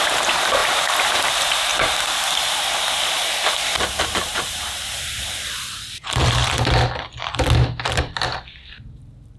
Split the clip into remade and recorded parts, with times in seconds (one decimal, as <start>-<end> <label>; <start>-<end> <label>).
0.0-1.7 remade; 1.7-4.0 recorded; 4.0-6.4 remade; 6.4-8.0 recorded; 8.0-9.4 remade